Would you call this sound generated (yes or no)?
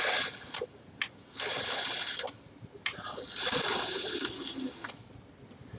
no